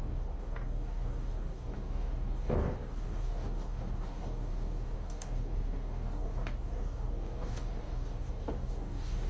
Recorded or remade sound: remade